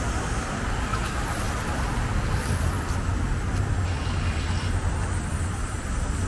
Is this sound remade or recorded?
recorded